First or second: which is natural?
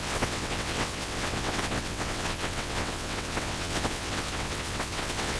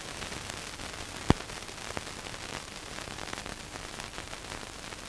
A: second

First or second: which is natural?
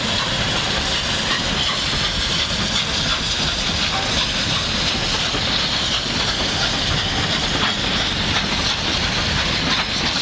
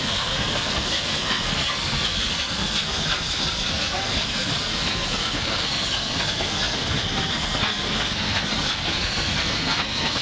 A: first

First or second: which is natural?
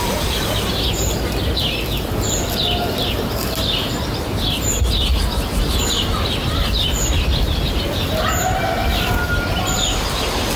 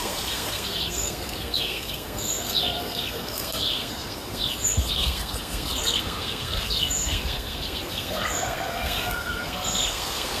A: first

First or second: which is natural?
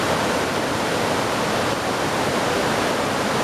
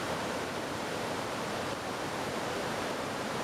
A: first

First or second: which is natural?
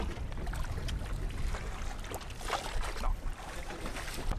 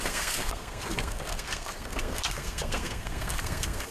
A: first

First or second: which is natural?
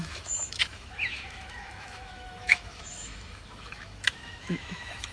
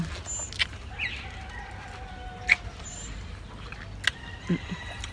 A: second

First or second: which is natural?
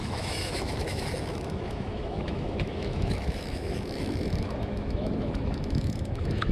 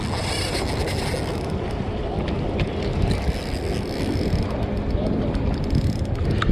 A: second